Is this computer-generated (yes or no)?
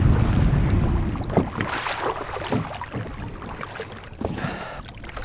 no